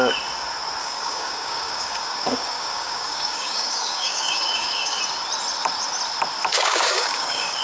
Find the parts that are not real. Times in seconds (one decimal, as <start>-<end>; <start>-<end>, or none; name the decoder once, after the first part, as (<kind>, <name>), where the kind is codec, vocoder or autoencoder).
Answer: 0.8-5.0 (codec, DAC); 6.5-7.6